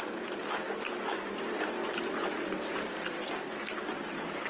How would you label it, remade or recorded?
recorded